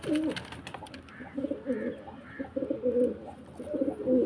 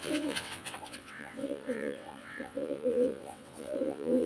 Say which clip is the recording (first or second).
first